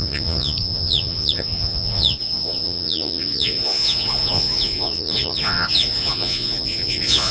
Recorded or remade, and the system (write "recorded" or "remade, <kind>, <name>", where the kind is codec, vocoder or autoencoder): remade, vocoder, Vocos